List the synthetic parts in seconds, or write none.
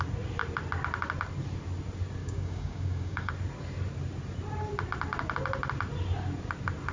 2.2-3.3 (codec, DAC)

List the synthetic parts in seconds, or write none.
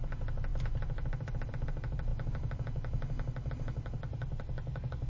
4.1-5.1 (codec, DAC)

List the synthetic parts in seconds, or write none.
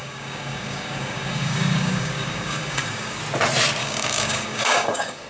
0.0-3.2 (codec, DAC); 3.8-5.3